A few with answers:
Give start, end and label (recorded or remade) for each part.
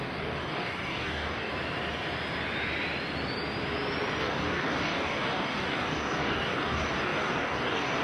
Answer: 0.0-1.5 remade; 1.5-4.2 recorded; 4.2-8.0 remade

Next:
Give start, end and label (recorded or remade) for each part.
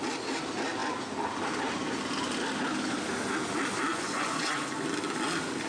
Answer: 0.0-3.9 recorded; 3.9-4.6 remade; 4.6-5.7 recorded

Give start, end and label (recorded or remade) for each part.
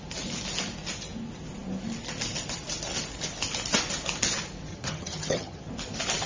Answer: 0.0-4.7 recorded; 4.7-5.7 remade; 5.7-6.3 recorded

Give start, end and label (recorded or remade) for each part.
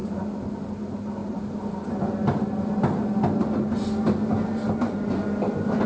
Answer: 0.0-5.9 recorded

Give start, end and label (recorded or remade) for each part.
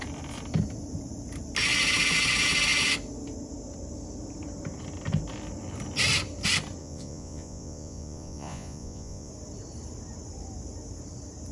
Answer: 0.0-6.8 recorded; 6.8-9.3 remade; 9.3-11.5 recorded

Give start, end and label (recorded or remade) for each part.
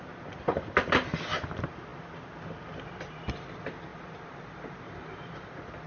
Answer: 0.0-3.9 recorded; 3.9-4.8 remade; 4.8-5.9 recorded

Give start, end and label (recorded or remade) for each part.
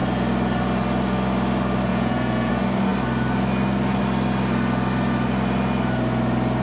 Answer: 0.0-1.9 recorded; 1.9-2.5 remade; 2.5-6.6 recorded